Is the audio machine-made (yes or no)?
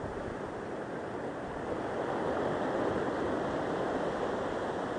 no